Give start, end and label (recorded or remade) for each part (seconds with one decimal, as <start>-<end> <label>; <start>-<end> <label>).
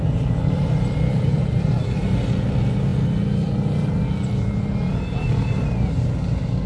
0.0-1.3 recorded; 1.3-2.0 remade; 2.0-6.7 recorded